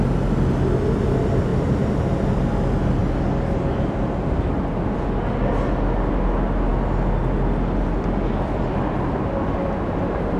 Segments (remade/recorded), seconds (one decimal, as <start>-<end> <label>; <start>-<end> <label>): 0.0-10.4 recorded

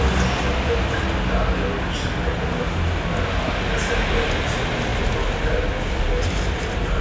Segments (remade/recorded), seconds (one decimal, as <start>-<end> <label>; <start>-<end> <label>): 0.0-7.0 recorded